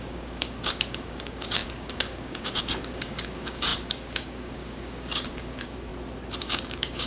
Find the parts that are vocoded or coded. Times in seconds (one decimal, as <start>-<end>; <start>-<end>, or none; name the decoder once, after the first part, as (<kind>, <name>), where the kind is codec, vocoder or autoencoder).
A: 0.0-5.9 (codec, DAC); 6.4-7.1